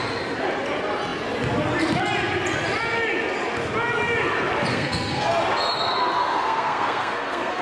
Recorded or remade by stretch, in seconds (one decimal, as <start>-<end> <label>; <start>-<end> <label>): 0.0-4.7 recorded; 4.7-5.3 remade; 5.3-6.2 recorded; 6.2-7.6 remade